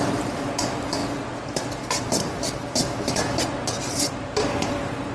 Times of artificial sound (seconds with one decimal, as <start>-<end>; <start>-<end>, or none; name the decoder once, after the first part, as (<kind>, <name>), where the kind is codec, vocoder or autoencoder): 0.0-1.0 (vocoder, BigVGAN v2); 4.1-5.1